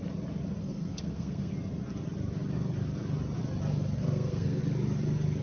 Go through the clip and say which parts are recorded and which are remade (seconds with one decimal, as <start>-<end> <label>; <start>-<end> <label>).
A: 0.0-0.6 recorded; 0.6-1.5 remade; 1.5-4.0 recorded; 4.0-4.6 remade; 4.6-5.4 recorded